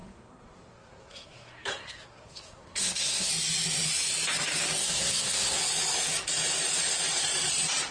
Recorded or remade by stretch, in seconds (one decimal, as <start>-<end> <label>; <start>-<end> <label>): 0.0-3.3 remade; 3.3-4.8 recorded; 4.8-5.6 remade; 5.6-7.9 recorded